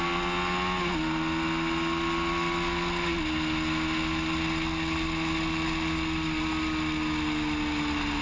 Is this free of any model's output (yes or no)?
yes